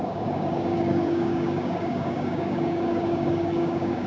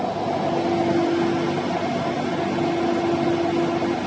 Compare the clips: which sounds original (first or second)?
second